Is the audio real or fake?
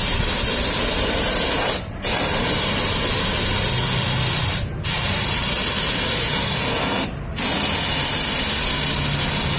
real